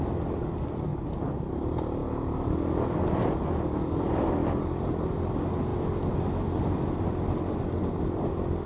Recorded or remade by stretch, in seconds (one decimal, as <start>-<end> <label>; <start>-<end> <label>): 0.0-8.7 recorded